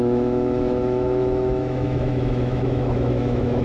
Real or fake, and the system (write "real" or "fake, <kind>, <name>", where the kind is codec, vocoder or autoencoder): fake, autoencoder, DAC-VAE